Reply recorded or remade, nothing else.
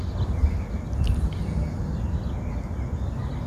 recorded